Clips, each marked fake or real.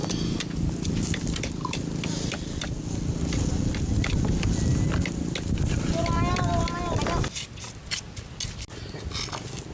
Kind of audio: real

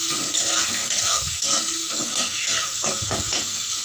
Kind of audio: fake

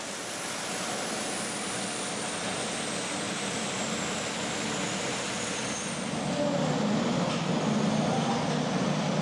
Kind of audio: real